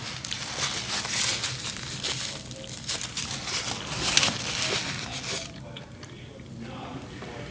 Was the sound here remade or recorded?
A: recorded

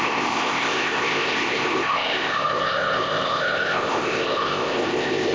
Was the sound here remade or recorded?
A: remade